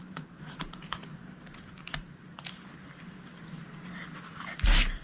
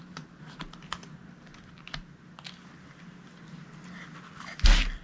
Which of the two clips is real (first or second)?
second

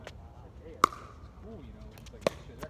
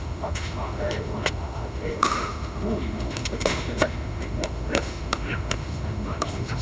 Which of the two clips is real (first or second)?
first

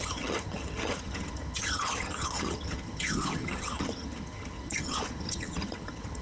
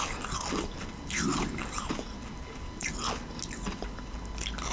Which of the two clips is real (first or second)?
second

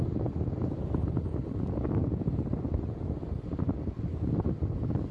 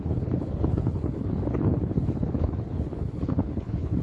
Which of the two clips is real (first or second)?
first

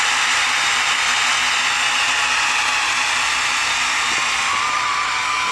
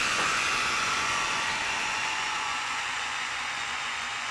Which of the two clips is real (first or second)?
first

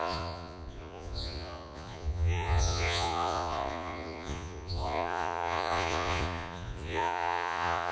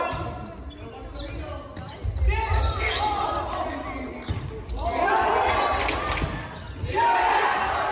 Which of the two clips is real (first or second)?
second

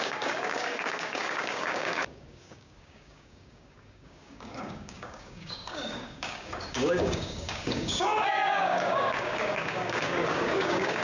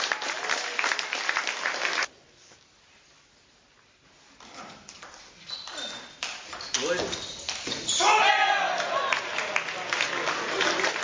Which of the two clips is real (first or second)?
second